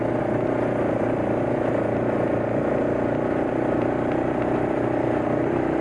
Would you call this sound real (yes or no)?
yes